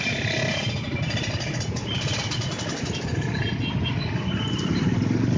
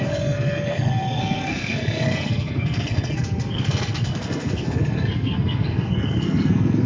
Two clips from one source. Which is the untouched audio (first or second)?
first